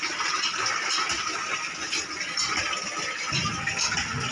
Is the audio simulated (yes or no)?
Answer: no